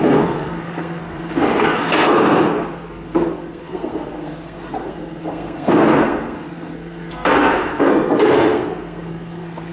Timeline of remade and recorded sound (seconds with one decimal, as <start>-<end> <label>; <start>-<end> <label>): 0.0-9.7 remade